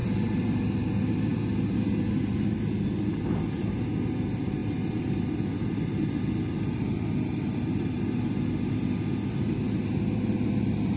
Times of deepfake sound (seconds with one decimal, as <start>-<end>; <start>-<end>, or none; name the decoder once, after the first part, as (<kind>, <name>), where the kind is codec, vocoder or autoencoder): 0.0-0.6 (vocoder, BigVGAN v2); 4.6-8.7